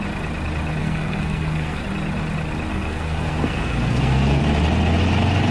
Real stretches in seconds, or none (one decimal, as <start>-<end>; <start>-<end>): 0.0-0.8; 1.8-2.7; 4.4-5.5